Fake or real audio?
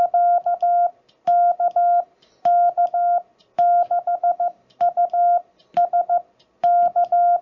real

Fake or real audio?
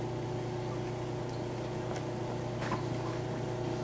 real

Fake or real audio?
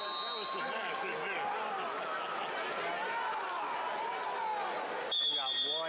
real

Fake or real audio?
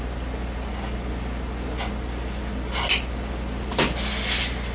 real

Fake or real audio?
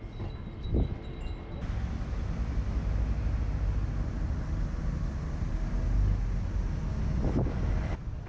real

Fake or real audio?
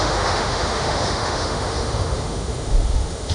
fake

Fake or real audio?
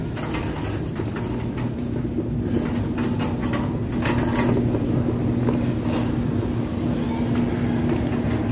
real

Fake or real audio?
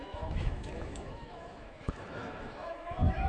fake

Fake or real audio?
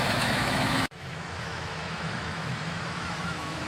fake